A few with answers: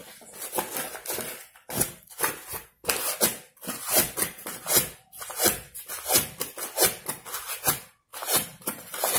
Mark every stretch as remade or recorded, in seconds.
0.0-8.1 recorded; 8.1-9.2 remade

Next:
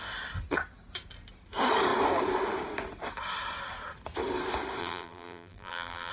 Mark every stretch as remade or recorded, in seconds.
0.0-4.8 recorded; 4.8-6.1 remade

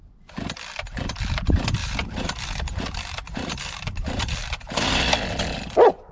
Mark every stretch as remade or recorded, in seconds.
0.0-1.8 recorded; 1.8-5.0 remade; 5.0-6.1 recorded

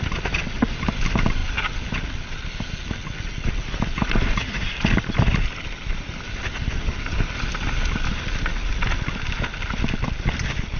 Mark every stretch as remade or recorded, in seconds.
0.0-10.8 recorded

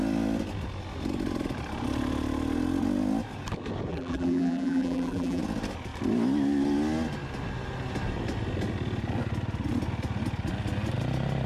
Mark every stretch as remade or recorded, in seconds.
0.0-3.9 recorded; 3.9-5.4 remade; 5.4-11.5 recorded

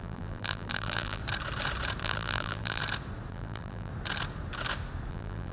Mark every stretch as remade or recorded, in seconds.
0.0-1.2 remade; 1.2-2.0 recorded; 2.0-2.8 remade; 2.8-3.3 recorded; 3.3-3.9 remade; 3.9-5.1 recorded; 5.1-5.5 remade

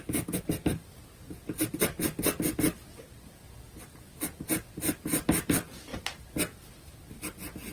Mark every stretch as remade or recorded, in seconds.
0.0-7.7 recorded

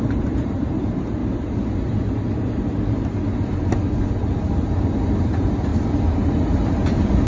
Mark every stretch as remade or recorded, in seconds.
0.0-1.2 remade; 1.2-5.2 recorded; 5.2-6.8 remade; 6.8-7.3 recorded